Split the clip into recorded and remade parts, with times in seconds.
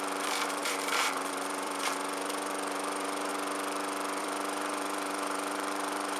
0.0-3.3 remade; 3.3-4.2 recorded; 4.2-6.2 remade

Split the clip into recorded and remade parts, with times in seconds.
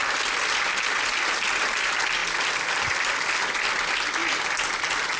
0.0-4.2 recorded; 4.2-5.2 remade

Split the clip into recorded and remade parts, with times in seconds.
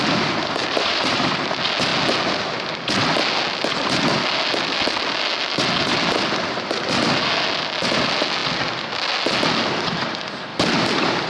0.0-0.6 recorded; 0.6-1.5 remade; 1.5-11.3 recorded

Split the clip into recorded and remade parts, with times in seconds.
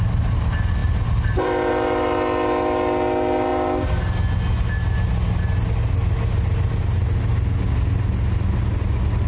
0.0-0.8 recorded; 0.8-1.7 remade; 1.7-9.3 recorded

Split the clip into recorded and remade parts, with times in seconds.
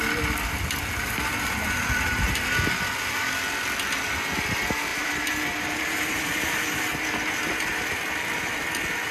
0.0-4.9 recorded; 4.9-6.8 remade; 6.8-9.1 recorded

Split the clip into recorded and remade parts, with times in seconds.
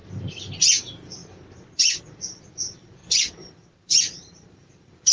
0.0-0.6 recorded; 0.6-1.2 remade; 1.2-2.4 recorded; 2.4-3.0 remade; 3.0-4.3 recorded; 4.3-5.1 remade